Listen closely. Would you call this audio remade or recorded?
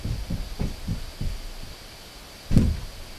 recorded